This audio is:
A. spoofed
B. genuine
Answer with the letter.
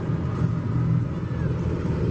B